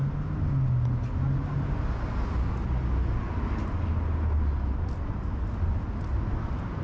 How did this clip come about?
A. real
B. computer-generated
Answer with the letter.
A